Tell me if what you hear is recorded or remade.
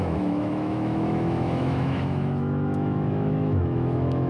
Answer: remade